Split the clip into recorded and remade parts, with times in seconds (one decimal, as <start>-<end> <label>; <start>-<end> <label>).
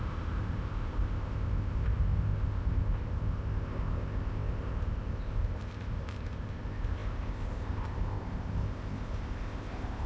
0.0-10.1 remade